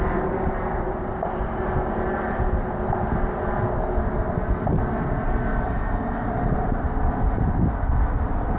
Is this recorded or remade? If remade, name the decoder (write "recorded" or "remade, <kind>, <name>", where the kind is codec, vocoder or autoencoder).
recorded